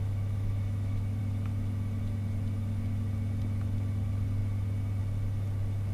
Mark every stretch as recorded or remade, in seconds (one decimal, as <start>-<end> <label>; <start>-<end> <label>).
0.0-1.2 remade; 1.2-5.9 recorded